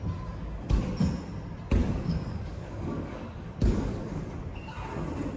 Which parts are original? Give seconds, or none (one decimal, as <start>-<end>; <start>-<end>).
0.0-1.8; 4.3-5.4